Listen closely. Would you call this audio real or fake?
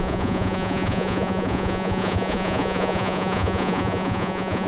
fake